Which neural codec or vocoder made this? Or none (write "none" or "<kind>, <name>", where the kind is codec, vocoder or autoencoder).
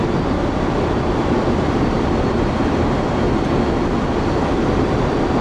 none